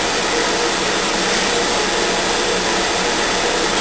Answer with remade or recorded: remade